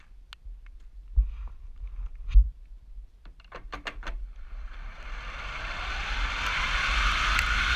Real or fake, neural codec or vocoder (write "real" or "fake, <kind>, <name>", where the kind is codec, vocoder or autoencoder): real